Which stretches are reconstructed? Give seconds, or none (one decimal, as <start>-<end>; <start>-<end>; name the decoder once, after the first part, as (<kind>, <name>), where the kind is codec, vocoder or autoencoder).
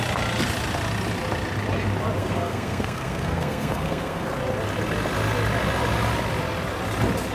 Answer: 2.2-4.3 (codec, SNAC)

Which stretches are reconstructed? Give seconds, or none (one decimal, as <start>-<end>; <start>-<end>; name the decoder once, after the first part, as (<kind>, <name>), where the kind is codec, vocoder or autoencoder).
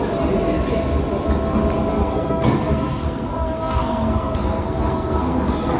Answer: 2.0-5.8 (codec, SNAC)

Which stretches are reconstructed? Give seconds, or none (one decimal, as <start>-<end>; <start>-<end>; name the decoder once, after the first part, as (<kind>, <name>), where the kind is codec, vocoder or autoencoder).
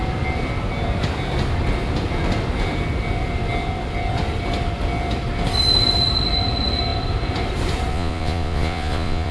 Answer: 7.9-9.3 (vocoder, Vocos)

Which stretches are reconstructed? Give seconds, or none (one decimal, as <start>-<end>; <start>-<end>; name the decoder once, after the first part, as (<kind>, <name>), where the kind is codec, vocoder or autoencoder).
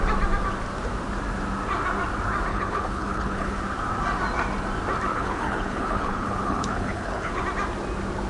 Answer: 2.5-3.5 (codec, HILCodec); 5.1-7.4